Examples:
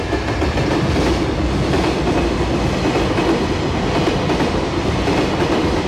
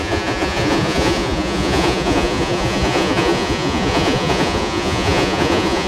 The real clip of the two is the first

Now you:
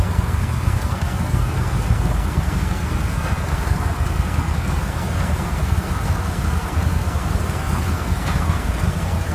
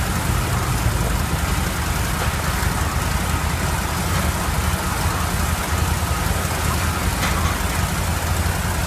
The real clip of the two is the second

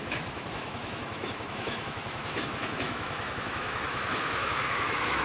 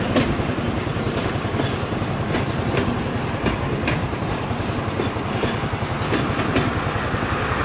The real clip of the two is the second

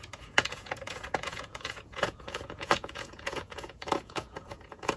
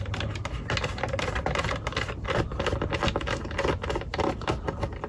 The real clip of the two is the second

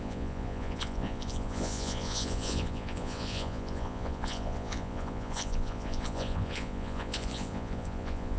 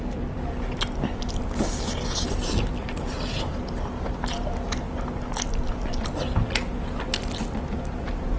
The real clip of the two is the second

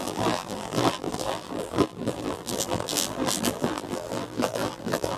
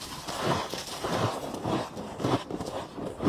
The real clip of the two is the second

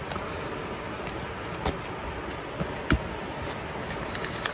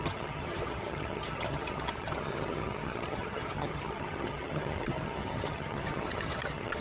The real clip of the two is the first